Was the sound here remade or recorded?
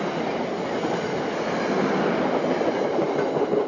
recorded